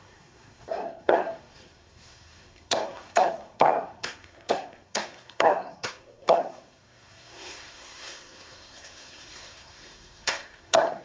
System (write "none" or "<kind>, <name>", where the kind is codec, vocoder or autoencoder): codec, SNAC